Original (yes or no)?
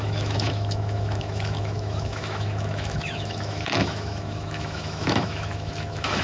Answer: no